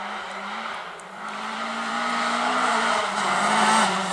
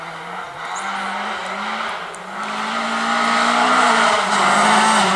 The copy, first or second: first